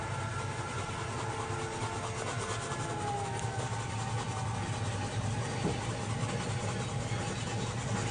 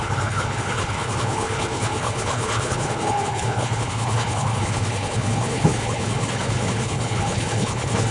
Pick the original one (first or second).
first